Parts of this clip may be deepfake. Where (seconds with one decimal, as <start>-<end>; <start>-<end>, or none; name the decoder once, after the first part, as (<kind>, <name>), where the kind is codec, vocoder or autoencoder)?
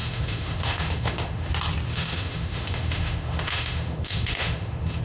0.0-1.5 (autoencoder, DAC-VAE); 1.9-5.0